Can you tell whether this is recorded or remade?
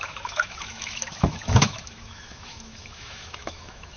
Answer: remade